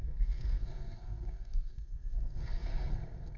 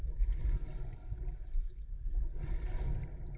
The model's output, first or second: first